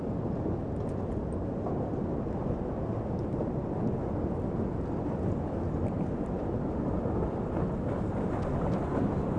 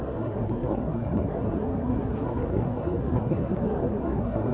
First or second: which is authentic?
first